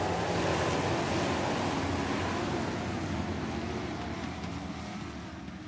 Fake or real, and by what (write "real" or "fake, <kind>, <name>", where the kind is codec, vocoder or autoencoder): real